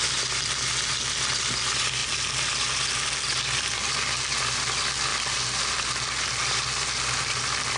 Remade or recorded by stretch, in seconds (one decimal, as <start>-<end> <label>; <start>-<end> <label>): 0.0-7.8 recorded